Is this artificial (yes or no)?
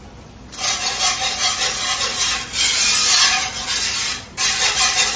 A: no